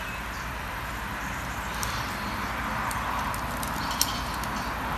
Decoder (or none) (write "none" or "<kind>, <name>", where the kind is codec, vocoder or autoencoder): none